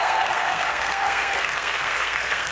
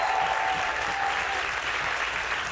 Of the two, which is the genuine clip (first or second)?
second